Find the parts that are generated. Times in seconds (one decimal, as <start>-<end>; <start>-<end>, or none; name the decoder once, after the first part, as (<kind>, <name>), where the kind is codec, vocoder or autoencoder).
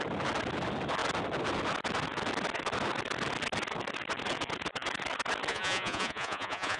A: 5.5-6.8 (vocoder, Vocos)